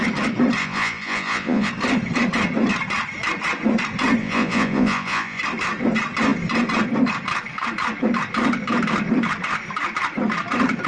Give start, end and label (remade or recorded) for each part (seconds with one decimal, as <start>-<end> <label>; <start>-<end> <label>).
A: 0.0-0.6 recorded; 0.6-1.7 remade; 1.7-4.2 recorded; 4.2-5.4 remade; 5.4-10.9 recorded